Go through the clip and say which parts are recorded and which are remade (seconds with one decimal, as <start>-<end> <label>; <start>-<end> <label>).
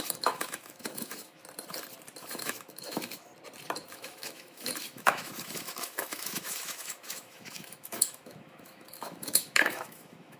0.0-1.4 remade; 1.4-2.2 recorded; 2.2-3.3 remade; 3.3-3.9 recorded; 3.9-10.4 remade